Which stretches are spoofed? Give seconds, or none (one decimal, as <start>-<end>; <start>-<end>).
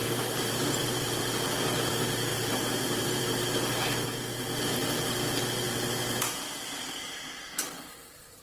0.0-1.2; 2.3-3.2